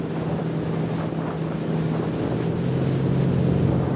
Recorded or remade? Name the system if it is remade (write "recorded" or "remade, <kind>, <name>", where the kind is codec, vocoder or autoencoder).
recorded